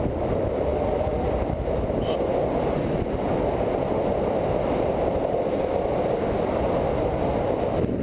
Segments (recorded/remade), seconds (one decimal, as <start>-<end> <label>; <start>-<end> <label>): 0.0-8.0 recorded